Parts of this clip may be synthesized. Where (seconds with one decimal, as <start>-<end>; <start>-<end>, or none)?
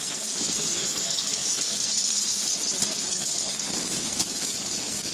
0.0-2.4; 3.1-5.1